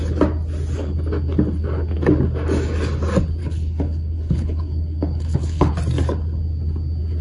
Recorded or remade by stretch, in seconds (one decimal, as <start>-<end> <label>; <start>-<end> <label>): 0.0-3.4 recorded; 3.4-5.7 remade; 5.7-7.2 recorded

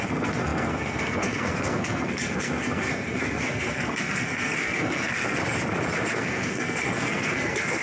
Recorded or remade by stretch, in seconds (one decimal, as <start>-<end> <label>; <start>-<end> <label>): 0.0-5.4 remade; 5.4-6.1 recorded; 6.1-7.8 remade